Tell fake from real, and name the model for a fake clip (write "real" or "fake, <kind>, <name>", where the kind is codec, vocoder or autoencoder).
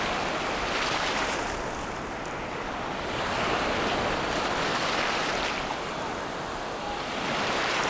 real